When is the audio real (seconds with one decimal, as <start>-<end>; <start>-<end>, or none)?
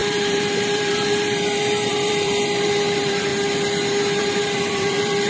3.3-4.2